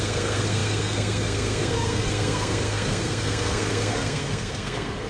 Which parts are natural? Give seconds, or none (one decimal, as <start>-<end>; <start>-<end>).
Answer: none